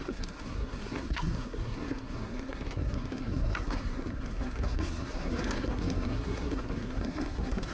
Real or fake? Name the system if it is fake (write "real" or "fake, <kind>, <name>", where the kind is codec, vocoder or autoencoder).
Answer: fake, codec, SNAC